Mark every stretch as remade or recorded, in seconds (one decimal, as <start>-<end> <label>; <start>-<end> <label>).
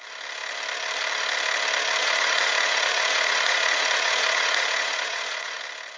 0.0-2.0 recorded; 2.0-5.6 remade; 5.6-6.0 recorded